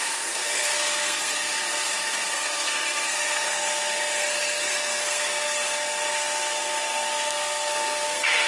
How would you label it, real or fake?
fake